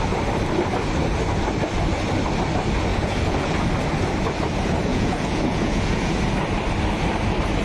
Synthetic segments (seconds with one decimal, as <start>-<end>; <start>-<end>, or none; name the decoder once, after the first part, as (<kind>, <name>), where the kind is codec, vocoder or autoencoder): 2.9-3.7 (vocoder, Vocos); 4.9-6.2